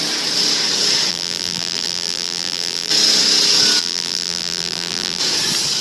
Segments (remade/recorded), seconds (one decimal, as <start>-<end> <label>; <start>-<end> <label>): 0.0-1.1 recorded; 1.1-2.9 remade; 2.9-3.8 recorded; 3.8-5.2 remade; 5.2-5.8 recorded